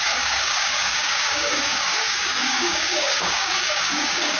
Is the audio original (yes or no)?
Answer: no